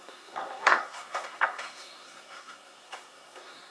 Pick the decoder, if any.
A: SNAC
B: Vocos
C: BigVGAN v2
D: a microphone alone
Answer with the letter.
A